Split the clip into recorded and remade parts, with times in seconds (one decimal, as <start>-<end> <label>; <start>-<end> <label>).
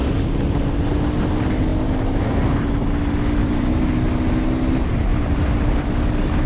0.0-1.7 recorded; 1.7-2.4 remade; 2.4-3.4 recorded; 3.4-3.9 remade; 3.9-5.1 recorded; 5.1-5.9 remade; 5.9-6.5 recorded